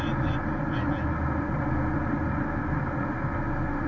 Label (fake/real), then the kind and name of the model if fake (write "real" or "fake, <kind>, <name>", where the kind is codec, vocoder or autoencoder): real